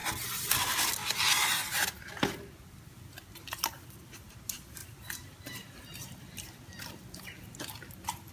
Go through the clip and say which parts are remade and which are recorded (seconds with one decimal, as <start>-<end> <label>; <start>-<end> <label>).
0.0-4.8 recorded; 4.8-6.2 remade; 6.2-8.3 recorded